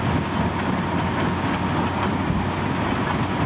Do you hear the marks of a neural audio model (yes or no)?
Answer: no